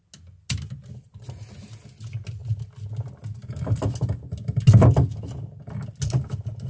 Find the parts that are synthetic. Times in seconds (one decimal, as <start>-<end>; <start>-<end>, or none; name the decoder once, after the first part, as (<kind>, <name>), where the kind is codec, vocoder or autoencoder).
none